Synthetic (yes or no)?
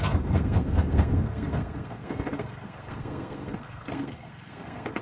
yes